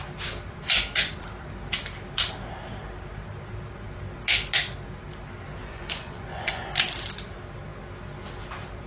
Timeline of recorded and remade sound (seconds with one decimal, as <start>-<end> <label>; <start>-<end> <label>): 0.0-5.6 recorded; 5.6-6.7 remade; 6.7-8.9 recorded